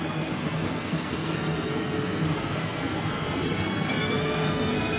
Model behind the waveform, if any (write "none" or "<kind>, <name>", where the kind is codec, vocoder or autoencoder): codec, SNAC